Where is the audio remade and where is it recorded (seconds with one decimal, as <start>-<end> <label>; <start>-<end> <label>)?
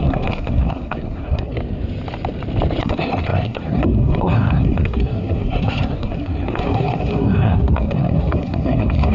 0.0-1.6 remade; 1.6-2.8 recorded; 2.8-9.1 remade